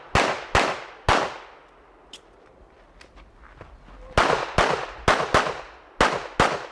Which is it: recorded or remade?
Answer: recorded